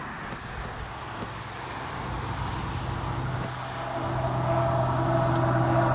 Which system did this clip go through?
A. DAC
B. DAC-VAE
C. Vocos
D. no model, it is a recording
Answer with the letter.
D